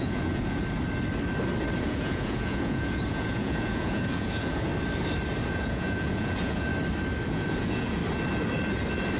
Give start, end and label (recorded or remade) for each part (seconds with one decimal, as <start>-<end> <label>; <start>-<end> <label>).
0.0-0.6 remade; 0.6-1.8 recorded; 1.8-4.7 remade; 4.7-5.5 recorded; 5.5-6.7 remade; 6.7-7.3 recorded; 7.3-8.0 remade; 8.0-9.2 recorded